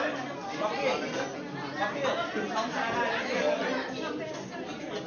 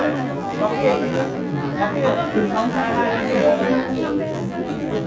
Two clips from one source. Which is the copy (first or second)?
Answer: second